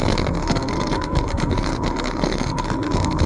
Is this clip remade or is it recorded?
remade